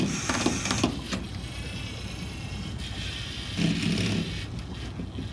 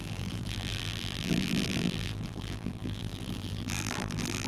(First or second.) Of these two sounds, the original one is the first